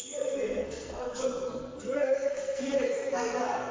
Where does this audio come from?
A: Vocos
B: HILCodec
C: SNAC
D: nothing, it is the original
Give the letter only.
C